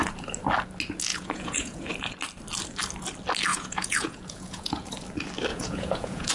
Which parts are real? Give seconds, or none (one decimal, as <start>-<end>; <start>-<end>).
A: 0.0-1.1; 1.9-3.5; 4.9-5.5